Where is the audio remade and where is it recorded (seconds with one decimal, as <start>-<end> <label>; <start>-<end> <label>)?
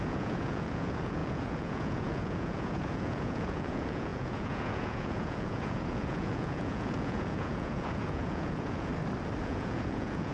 0.0-8.9 remade; 8.9-9.4 recorded; 9.4-10.3 remade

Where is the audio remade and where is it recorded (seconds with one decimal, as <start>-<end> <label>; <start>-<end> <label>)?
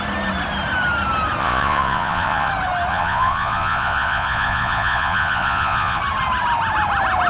0.0-1.4 recorded; 1.4-2.5 remade; 2.5-2.9 recorded; 2.9-6.0 remade; 6.0-7.3 recorded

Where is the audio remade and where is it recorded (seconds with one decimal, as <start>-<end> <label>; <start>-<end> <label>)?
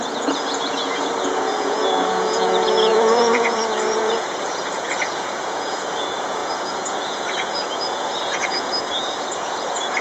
0.0-10.0 remade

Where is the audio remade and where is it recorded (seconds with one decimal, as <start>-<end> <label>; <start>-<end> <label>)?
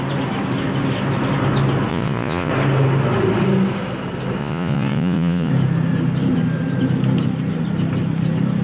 0.0-1.9 recorded; 1.9-2.5 remade; 2.5-4.4 recorded; 4.4-5.5 remade; 5.5-8.6 recorded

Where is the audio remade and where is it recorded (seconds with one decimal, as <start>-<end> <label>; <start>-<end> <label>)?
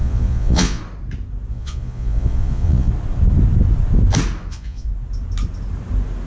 0.0-0.8 remade; 0.8-1.5 recorded; 1.5-2.9 remade; 2.9-4.5 recorded; 4.5-4.9 remade; 4.9-6.3 recorded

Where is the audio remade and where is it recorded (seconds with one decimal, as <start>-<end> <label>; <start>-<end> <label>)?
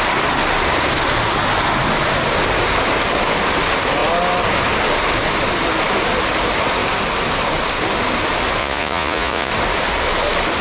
0.0-8.6 recorded; 8.6-9.5 remade; 9.5-10.6 recorded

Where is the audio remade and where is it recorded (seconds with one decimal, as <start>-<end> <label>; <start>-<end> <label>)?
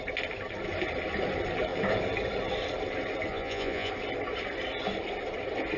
0.0-3.3 recorded; 3.3-3.9 remade; 3.9-5.8 recorded